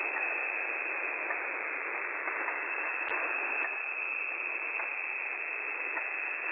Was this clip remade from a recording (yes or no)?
no